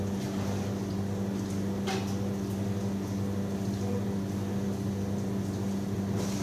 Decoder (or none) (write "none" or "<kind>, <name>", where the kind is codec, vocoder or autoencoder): none